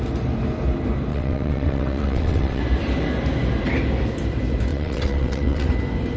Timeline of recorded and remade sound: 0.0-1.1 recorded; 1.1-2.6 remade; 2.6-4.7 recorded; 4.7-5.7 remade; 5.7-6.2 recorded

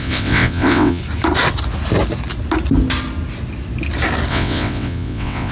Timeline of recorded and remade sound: 0.0-1.0 remade; 1.0-4.3 recorded; 4.3-5.5 remade

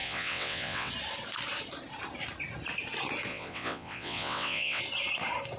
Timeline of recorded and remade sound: 0.0-0.9 remade; 0.9-3.3 recorded; 3.3-4.8 remade; 4.8-5.6 recorded